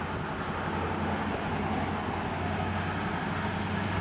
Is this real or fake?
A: real